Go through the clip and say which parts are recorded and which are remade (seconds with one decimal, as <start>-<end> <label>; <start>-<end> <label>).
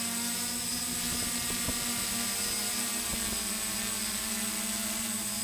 0.0-5.4 recorded